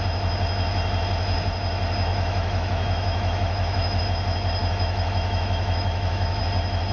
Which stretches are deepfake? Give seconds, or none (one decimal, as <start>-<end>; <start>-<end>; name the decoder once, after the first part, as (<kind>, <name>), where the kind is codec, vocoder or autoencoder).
2.1-4.0 (autoencoder, DAC-VAE); 4.6-6.4